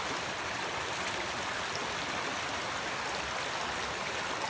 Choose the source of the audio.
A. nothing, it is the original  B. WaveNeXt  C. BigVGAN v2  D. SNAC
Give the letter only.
A